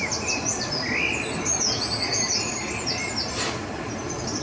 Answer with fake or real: real